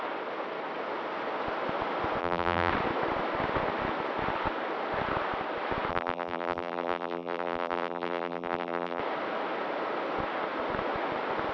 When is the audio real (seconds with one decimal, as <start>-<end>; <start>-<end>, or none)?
0.0-2.2; 2.7-5.9; 9.0-11.5